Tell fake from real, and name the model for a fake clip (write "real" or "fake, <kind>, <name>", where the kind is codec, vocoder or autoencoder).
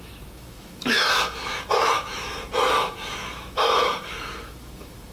fake, autoencoder, DAC-VAE